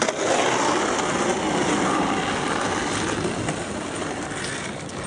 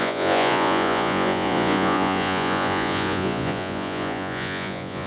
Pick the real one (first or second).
first